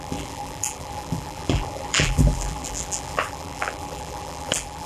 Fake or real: fake